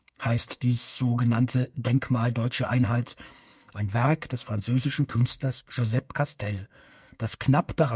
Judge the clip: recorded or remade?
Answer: remade